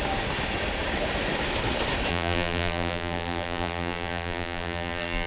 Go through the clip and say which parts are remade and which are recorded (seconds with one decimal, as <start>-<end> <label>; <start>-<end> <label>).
0.0-2.1 recorded; 2.1-5.3 remade